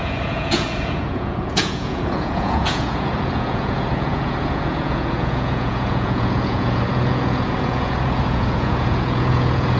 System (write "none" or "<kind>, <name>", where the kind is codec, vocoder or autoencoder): vocoder, Vocos